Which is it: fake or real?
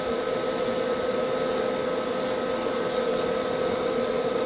real